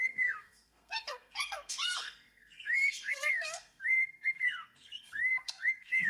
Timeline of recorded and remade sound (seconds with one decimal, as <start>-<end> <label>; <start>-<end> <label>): 0.0-6.1 remade